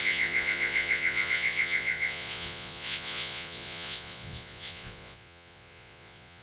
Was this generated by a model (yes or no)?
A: yes